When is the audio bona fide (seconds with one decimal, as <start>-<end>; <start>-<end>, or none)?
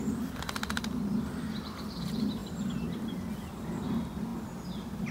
0.0-5.1